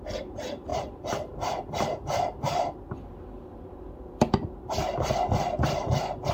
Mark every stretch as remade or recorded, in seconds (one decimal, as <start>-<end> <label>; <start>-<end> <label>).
0.0-0.7 recorded; 0.7-4.5 remade; 4.5-6.3 recorded